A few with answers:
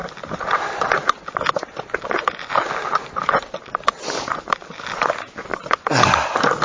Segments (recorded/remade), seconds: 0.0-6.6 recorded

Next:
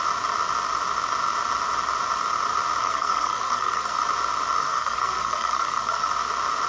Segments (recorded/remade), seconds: 0.0-2.8 recorded; 2.8-4.0 remade; 4.0-4.6 recorded; 4.6-6.1 remade; 6.1-6.7 recorded

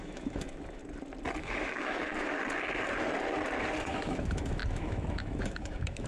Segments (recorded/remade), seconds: 0.0-0.8 remade; 0.8-1.4 recorded; 1.4-2.4 remade; 2.4-3.8 recorded; 3.8-6.1 remade

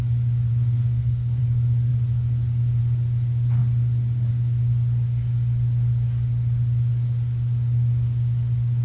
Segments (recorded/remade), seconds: 0.0-0.5 recorded; 0.5-1.4 remade; 1.4-8.8 recorded

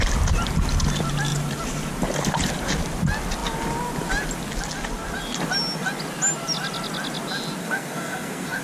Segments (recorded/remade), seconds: 0.0-7.6 recorded; 7.6-8.6 remade

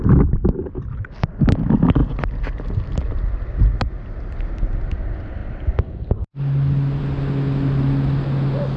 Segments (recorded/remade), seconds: 0.0-8.8 recorded

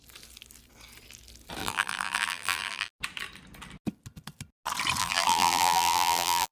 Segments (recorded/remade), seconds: 0.0-1.6 recorded; 1.6-2.9 remade; 2.9-5.0 recorded; 5.0-6.5 remade